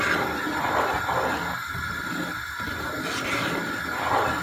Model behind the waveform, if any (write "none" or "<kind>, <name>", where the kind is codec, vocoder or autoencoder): none